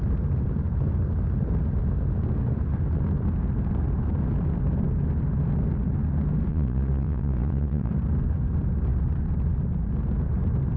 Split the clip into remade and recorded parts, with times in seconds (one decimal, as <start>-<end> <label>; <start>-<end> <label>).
0.0-6.5 recorded; 6.5-7.9 remade; 7.9-10.8 recorded